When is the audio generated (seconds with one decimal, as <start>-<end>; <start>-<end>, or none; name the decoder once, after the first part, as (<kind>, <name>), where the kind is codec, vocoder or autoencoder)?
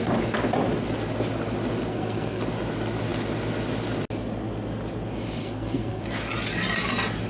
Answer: 1.9-2.4 (codec, SNAC); 5.4-6.0